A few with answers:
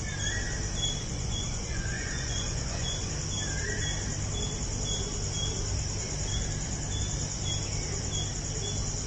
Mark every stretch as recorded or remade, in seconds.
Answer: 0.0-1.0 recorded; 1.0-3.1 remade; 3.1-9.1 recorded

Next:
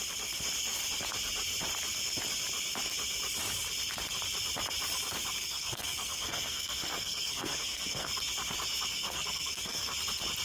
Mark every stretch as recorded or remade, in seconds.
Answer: 0.0-5.4 recorded; 5.4-8.1 remade; 8.1-8.9 recorded; 8.9-9.9 remade; 9.9-10.4 recorded

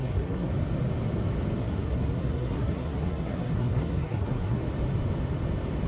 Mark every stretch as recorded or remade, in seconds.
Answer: 0.0-0.5 remade; 0.5-1.6 recorded; 1.6-4.6 remade; 4.6-5.9 recorded

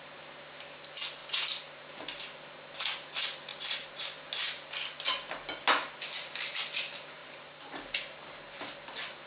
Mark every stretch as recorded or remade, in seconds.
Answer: 0.0-1.2 recorded; 1.2-1.8 remade; 1.8-7.2 recorded; 7.2-7.9 remade; 7.9-9.3 recorded